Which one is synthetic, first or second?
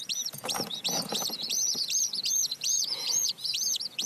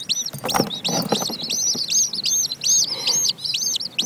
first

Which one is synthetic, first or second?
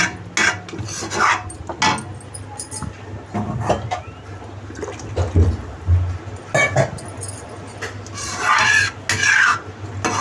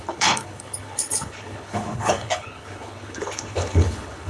second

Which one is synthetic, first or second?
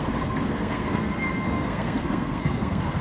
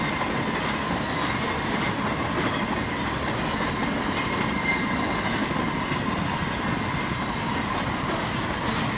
first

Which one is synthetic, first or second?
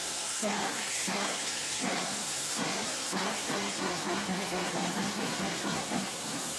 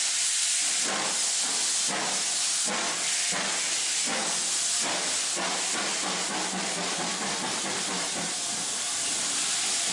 first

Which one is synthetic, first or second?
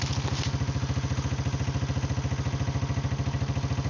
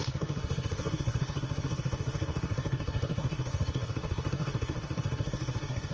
second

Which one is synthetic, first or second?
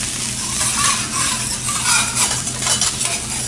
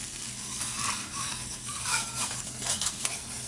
second